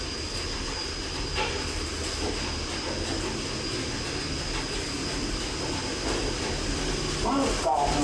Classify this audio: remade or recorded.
recorded